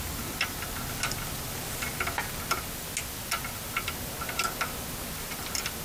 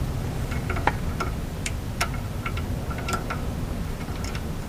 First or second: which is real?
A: first